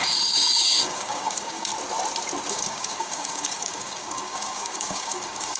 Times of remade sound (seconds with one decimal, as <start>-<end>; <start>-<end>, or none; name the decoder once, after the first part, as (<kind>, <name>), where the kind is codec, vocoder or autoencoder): 0.0-1.7 (codec, DAC); 2.5-5.6